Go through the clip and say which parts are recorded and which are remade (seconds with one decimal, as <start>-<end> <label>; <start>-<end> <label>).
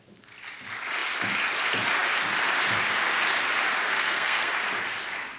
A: 0.0-3.9 recorded; 3.9-4.5 remade; 4.5-5.4 recorded